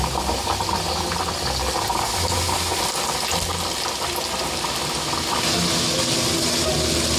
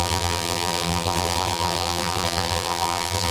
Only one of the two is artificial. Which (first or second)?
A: second